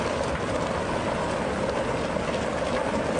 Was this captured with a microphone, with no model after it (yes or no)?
yes